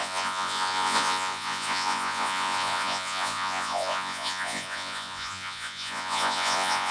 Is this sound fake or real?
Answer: fake